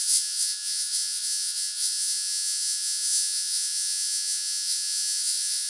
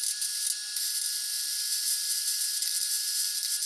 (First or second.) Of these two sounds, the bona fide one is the second